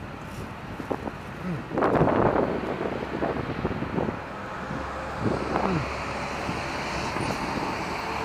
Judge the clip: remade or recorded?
recorded